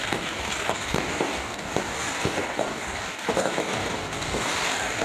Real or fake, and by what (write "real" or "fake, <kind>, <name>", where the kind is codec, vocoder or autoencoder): fake, codec, DAC